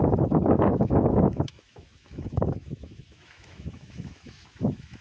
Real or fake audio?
fake